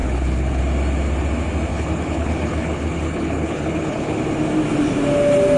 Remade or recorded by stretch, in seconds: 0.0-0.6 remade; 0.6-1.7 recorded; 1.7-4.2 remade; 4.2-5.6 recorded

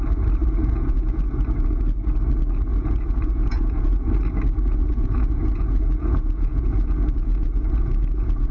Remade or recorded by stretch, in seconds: 0.0-0.4 recorded; 0.4-1.2 remade; 1.2-2.7 recorded; 2.7-4.1 remade; 4.1-4.7 recorded; 4.7-8.5 remade

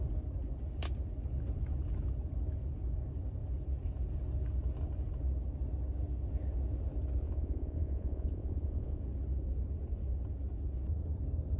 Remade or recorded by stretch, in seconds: 0.0-7.2 recorded; 7.2-9.0 remade; 9.0-11.6 recorded

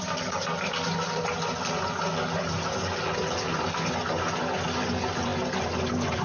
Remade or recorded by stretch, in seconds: 0.0-6.2 recorded

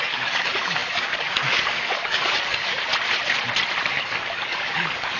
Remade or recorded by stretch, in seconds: 0.0-2.9 remade; 2.9-3.8 recorded; 3.8-5.2 remade

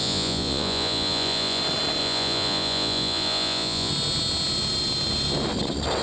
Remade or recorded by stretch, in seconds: 0.0-1.6 remade; 1.6-2.0 recorded; 2.0-3.9 remade; 3.9-6.0 recorded

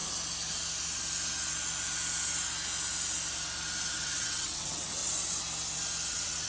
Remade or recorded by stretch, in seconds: 0.0-3.9 recorded; 3.9-5.0 remade; 5.0-6.1 recorded; 6.1-6.5 remade

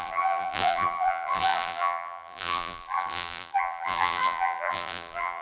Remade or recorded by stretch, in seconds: 0.0-5.4 remade